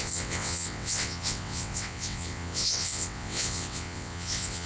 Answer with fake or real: fake